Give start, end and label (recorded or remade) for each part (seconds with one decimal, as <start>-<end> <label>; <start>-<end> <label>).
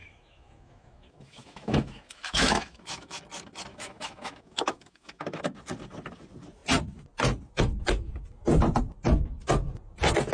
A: 0.0-3.2 remade; 3.2-3.7 recorded; 3.7-5.4 remade; 5.4-10.3 recorded